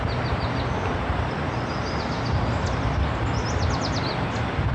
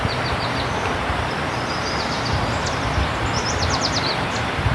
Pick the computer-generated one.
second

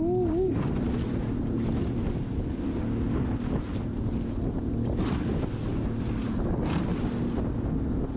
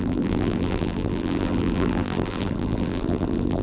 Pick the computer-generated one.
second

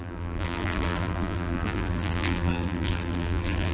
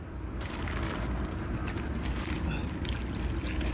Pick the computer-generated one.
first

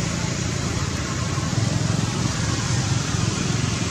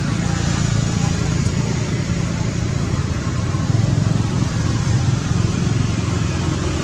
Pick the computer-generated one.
first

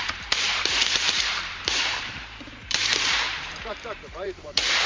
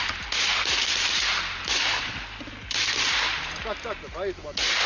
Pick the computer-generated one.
first